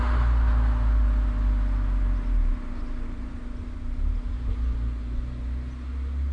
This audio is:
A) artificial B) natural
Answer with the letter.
B